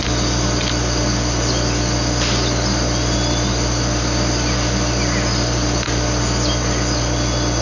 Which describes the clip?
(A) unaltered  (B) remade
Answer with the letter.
A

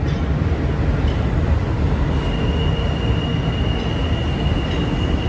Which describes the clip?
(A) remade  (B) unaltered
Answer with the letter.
B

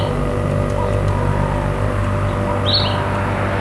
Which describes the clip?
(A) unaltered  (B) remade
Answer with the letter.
A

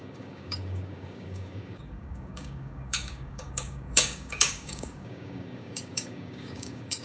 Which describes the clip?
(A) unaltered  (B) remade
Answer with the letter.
B